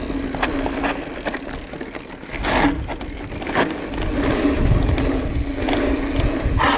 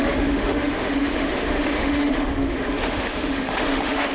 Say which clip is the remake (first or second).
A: second